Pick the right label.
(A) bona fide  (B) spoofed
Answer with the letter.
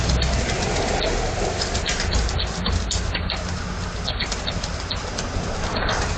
A